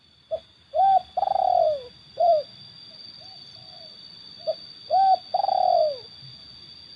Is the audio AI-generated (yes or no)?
no